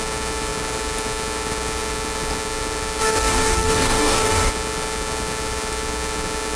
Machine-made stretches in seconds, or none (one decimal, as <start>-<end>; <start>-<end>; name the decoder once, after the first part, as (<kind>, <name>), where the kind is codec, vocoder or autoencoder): 3.0-4.5 (codec, DAC)